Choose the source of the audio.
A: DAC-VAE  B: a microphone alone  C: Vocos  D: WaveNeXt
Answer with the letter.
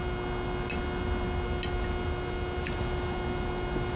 B